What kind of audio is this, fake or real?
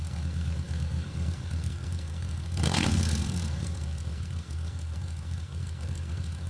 fake